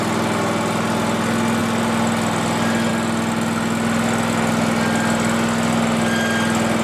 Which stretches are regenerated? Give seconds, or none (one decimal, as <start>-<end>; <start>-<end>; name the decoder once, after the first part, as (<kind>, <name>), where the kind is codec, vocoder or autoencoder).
none